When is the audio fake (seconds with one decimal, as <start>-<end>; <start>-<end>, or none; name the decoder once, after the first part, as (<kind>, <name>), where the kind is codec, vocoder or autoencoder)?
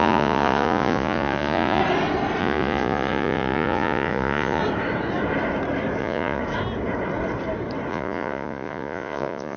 0.0-1.8 (vocoder, Vocos); 2.4-4.6; 6.0-6.4; 7.9-9.6